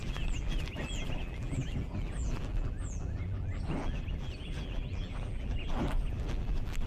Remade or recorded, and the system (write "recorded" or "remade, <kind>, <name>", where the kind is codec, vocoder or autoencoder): remade, vocoder, BigVGAN v2